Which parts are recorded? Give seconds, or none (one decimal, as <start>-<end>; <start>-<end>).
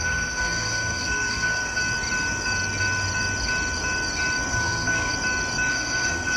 1.8-4.5; 5.1-5.7